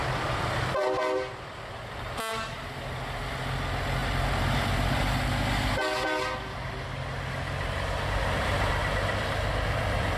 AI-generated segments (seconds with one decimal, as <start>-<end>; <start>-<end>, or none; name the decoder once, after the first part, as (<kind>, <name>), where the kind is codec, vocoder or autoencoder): none